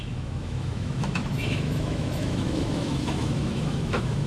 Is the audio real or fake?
fake